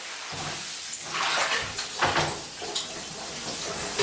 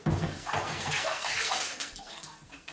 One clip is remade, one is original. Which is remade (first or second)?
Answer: second